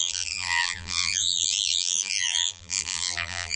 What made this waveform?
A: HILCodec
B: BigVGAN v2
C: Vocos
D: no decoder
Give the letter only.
B